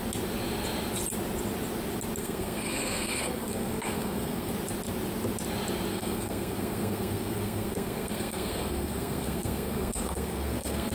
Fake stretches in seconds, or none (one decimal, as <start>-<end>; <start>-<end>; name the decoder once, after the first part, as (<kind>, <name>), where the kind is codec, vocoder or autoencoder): 2.2-4.5 (codec, SNAC); 5.9-10.9